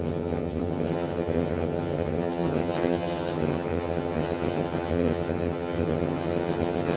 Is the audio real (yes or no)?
no